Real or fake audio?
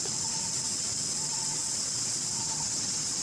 fake